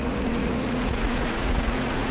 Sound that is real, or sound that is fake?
fake